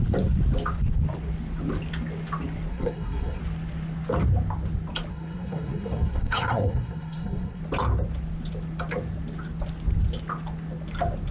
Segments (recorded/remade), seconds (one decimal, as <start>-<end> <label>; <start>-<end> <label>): 0.0-2.7 recorded; 2.7-3.4 remade; 3.4-5.1 recorded; 5.1-7.6 remade; 7.6-11.3 recorded

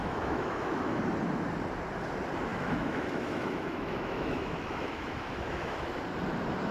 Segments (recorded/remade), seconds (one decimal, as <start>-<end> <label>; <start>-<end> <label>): 0.0-1.0 remade; 1.0-2.5 recorded; 2.5-6.0 remade; 6.0-6.7 recorded